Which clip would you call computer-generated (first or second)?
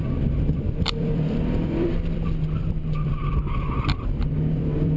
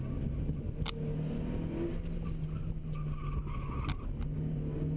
first